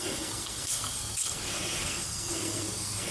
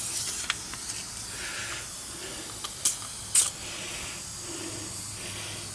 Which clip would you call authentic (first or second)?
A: second